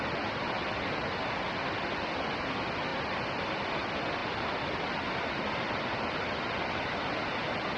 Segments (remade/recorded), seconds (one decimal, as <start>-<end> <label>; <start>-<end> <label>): 0.0-7.8 recorded